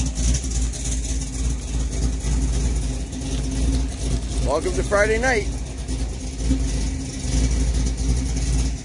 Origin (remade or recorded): recorded